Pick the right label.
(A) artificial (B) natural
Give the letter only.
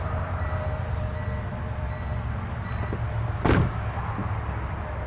B